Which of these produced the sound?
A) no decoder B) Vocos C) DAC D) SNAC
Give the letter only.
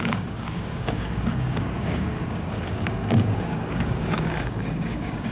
C